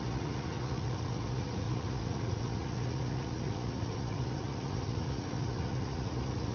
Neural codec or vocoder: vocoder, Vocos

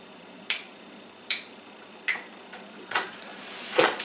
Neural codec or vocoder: vocoder, Vocos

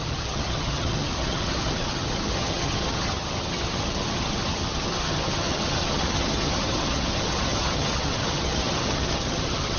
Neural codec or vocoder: vocoder, HiFi-GAN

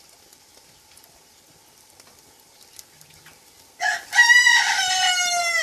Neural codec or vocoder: vocoder, BigVGAN v2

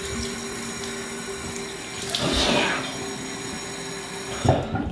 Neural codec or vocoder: none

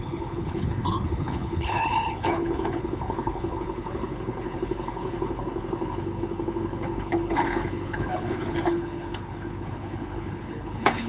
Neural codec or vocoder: codec, HILCodec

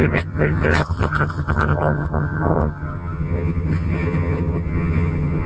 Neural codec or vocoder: vocoder, HiFi-GAN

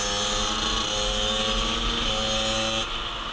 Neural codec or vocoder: none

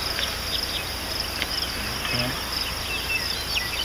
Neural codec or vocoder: none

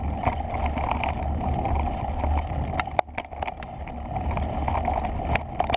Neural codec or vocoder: none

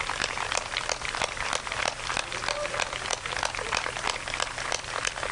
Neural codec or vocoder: none